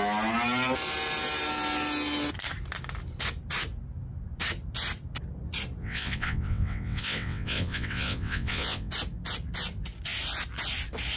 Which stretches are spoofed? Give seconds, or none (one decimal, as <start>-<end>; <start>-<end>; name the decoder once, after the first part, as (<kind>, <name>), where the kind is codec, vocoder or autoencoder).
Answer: 5.8-8.9 (vocoder, WaveNeXt)